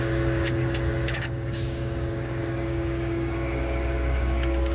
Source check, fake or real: fake